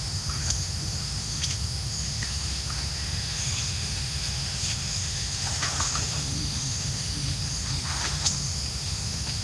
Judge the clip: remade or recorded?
remade